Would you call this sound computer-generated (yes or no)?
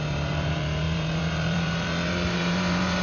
yes